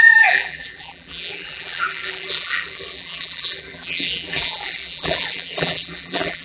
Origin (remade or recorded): remade